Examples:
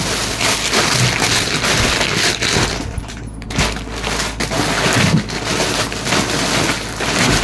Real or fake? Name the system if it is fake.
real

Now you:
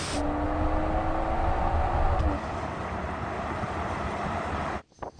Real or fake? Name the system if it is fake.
real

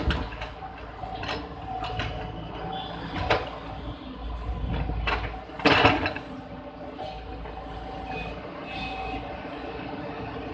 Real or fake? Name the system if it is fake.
real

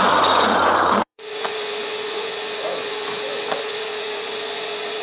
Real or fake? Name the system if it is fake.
fake, vocoder, Vocos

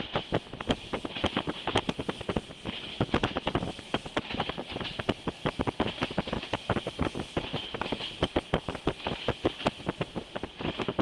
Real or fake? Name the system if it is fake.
real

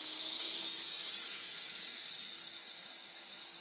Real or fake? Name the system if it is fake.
fake, codec, DAC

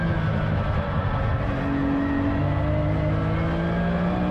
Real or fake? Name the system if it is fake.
real